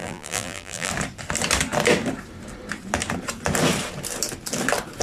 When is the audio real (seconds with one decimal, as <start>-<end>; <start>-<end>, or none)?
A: 0.9-5.0